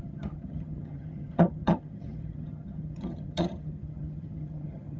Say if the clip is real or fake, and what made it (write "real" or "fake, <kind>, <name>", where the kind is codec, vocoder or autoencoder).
fake, vocoder, HiFi-GAN